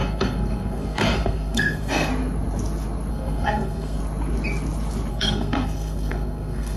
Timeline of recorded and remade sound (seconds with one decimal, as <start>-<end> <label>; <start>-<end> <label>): 0.0-2.1 remade; 2.1-3.1 recorded; 3.1-4.0 remade; 4.0-5.1 recorded; 5.1-6.8 remade